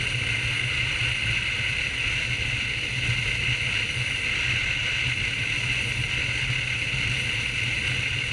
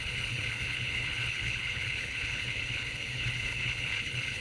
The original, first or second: first